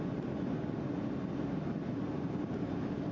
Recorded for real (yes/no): yes